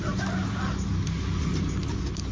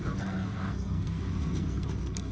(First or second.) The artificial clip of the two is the second